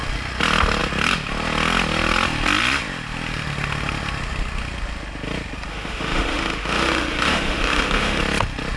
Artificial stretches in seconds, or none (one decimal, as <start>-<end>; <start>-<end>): 5.7-8.2